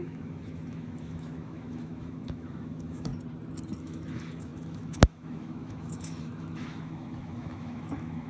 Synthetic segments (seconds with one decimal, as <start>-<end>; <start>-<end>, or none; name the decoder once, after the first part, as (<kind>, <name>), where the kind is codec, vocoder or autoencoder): 0.0-3.1 (autoencoder, DAC-VAE); 3.8-8.3